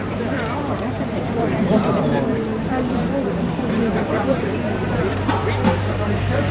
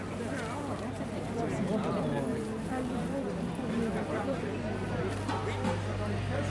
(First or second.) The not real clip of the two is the first